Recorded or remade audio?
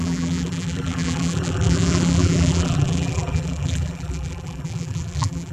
remade